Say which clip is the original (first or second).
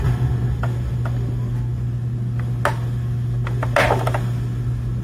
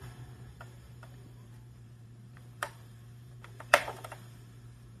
first